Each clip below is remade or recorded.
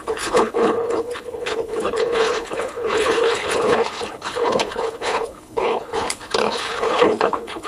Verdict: remade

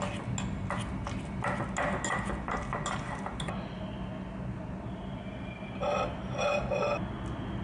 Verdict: recorded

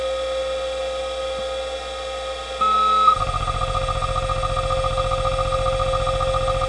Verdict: recorded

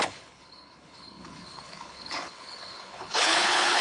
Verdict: remade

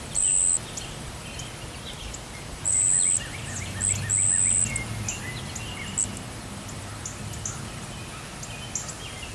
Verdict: recorded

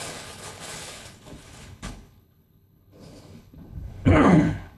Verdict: remade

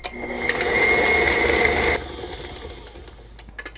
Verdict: recorded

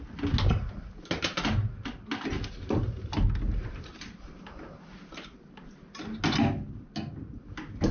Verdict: recorded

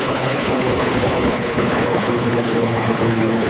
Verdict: remade